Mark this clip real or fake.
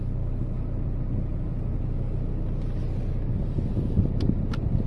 real